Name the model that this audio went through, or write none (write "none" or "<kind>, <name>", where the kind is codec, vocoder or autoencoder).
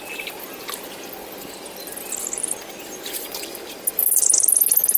none